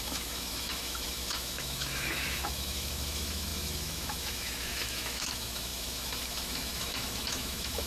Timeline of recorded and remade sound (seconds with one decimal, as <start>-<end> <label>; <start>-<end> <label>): 0.0-7.9 remade